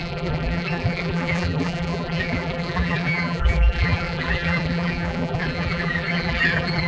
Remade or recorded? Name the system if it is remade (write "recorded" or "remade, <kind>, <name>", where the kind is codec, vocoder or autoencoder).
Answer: remade, vocoder, BigVGAN v2